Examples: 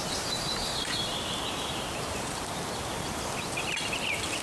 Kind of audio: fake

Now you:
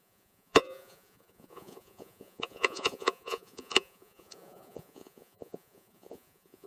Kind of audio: fake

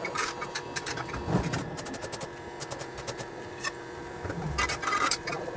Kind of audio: fake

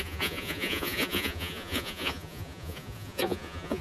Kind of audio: fake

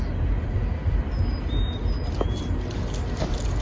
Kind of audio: real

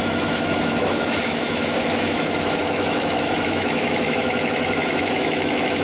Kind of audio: fake